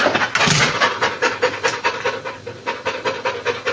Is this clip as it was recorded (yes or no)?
yes